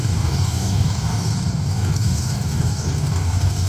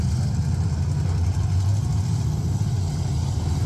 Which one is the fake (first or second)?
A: first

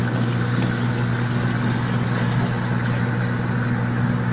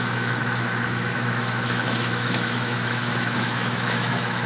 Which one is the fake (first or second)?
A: second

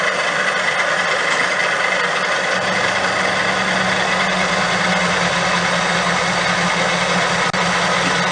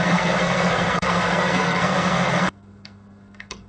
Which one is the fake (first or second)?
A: second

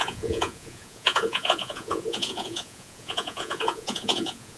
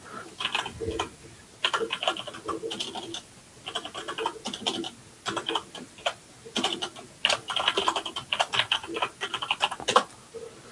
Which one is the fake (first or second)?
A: first